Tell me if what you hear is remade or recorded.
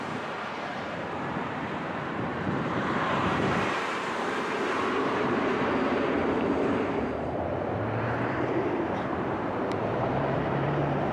remade